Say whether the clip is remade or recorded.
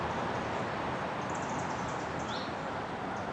recorded